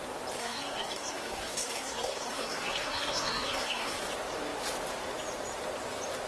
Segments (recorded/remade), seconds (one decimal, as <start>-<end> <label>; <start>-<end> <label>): 0.0-0.4 recorded; 0.4-4.0 remade; 4.0-6.3 recorded

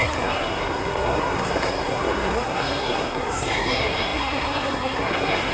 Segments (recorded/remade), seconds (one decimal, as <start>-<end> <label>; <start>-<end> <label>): 0.0-5.5 remade

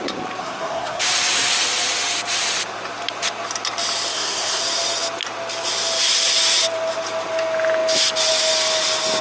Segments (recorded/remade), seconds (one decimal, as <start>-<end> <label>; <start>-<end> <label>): 0.0-0.4 recorded; 0.4-1.0 remade; 1.0-4.1 recorded; 4.1-4.6 remade; 4.6-9.2 recorded

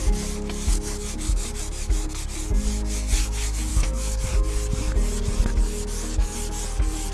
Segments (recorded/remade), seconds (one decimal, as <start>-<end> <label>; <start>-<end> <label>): 0.0-3.7 recorded; 3.7-4.3 remade; 4.3-7.1 recorded

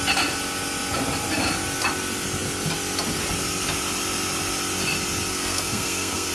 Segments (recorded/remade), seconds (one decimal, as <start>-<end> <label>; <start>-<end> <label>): 0.0-5.3 recorded; 5.3-6.3 remade

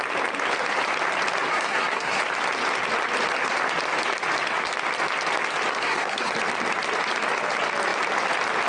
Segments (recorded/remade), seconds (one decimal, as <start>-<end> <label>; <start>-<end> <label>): 0.0-1.5 recorded; 1.5-2.2 remade; 2.2-5.7 recorded; 5.7-6.3 remade; 6.3-8.7 recorded

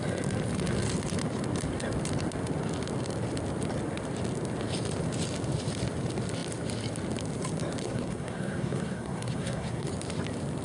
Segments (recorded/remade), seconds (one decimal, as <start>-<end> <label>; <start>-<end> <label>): 0.0-7.8 recorded; 7.8-9.9 remade; 9.9-10.6 recorded

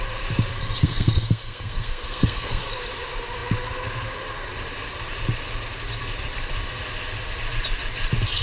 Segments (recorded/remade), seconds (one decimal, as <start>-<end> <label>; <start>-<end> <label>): 0.0-0.8 recorded; 0.8-2.6 remade; 2.6-8.4 recorded